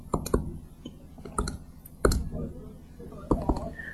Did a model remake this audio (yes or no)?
no